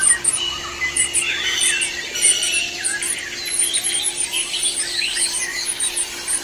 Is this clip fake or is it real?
real